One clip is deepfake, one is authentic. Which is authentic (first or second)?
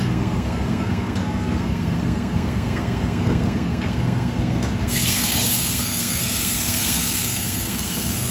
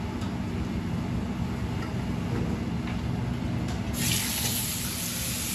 second